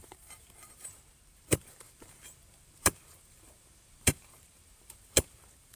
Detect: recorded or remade remade